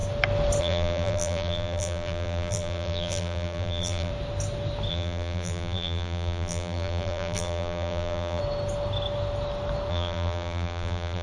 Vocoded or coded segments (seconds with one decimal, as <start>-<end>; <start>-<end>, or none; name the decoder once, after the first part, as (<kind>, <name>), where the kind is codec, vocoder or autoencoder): 0.6-4.1 (vocoder, BigVGAN v2); 4.9-8.4; 9.9-11.2